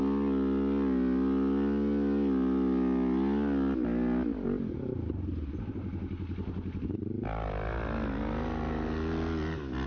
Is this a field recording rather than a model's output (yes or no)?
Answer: yes